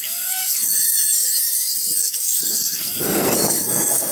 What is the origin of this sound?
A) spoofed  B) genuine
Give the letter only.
A